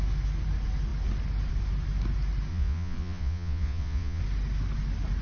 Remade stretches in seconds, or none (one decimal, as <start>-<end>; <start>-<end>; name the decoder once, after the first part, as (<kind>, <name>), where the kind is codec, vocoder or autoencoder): 2.5-4.2 (vocoder, Vocos)